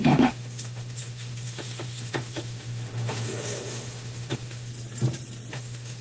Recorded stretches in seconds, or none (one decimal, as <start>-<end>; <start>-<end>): 4.7-5.5